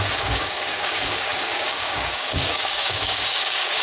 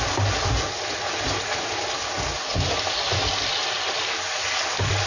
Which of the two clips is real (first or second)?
second